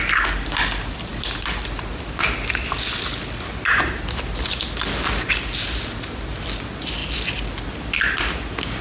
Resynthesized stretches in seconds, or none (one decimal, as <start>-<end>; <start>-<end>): none